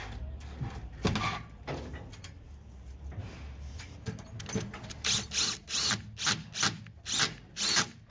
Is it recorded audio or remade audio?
recorded